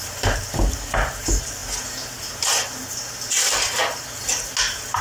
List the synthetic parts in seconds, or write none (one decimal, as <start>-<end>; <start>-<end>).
none